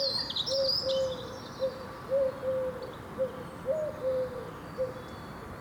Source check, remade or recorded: recorded